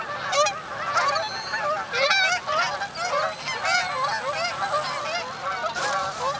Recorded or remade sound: recorded